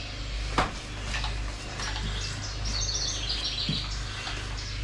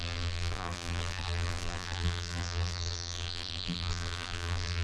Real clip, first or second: first